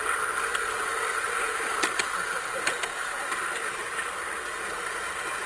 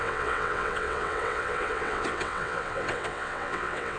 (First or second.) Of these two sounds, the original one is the first